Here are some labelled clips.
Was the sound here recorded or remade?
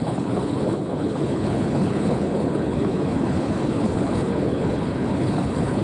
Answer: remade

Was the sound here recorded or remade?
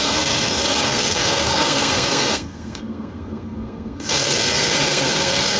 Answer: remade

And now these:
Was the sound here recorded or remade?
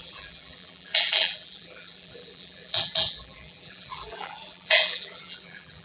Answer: remade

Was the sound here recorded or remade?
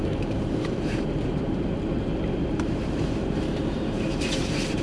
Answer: remade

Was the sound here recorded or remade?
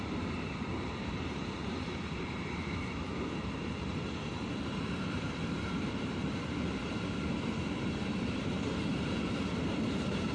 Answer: remade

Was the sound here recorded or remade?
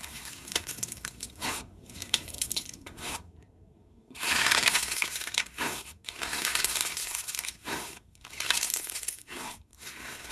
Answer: remade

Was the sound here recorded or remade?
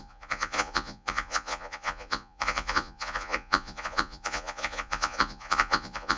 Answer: remade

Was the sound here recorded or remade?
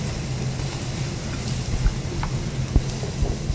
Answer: recorded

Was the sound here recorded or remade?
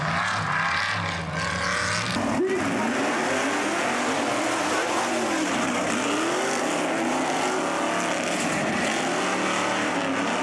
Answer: recorded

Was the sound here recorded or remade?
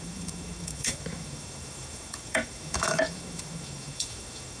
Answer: remade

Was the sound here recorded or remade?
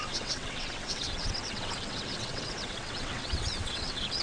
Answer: remade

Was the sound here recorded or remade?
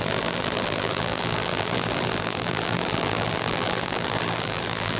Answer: remade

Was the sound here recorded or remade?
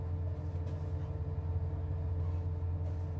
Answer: recorded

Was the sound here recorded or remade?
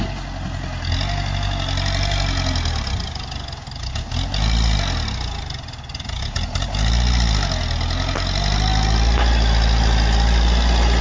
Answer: recorded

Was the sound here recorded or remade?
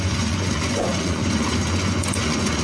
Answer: remade